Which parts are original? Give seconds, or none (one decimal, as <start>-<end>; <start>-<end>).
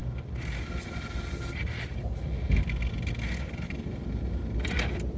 0.0-5.2